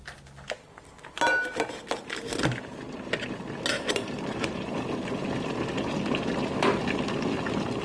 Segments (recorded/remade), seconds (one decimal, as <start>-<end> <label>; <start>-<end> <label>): 0.0-7.8 recorded